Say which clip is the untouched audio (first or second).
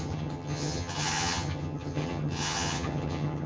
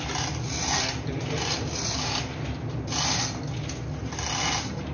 second